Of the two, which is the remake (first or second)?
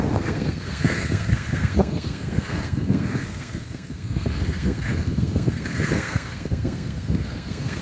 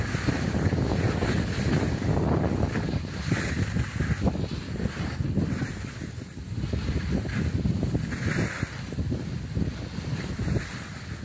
first